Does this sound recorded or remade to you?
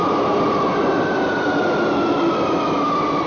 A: recorded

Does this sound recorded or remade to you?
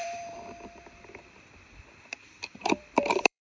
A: remade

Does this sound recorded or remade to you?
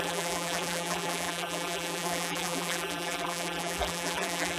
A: remade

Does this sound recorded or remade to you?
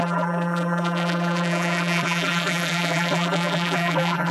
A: remade